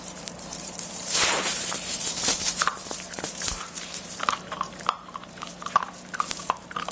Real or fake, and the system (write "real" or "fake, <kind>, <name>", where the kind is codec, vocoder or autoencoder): fake, vocoder, BigVGAN v2